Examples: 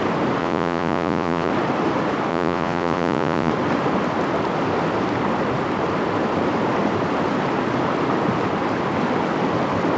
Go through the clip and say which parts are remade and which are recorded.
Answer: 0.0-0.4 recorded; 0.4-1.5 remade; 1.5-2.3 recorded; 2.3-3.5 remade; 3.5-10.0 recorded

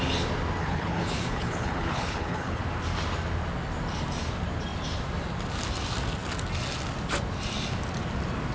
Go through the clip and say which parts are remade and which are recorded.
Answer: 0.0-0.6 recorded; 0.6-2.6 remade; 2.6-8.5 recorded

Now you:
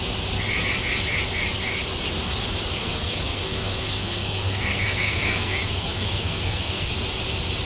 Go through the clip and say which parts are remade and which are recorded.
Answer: 0.0-2.8 recorded; 2.8-6.9 remade; 6.9-7.7 recorded